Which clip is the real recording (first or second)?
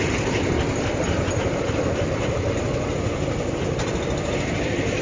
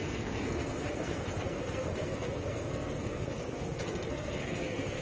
first